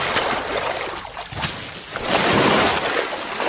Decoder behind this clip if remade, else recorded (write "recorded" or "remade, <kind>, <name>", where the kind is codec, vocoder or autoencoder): recorded